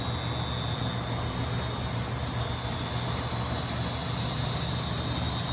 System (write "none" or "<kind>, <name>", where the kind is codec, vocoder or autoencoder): none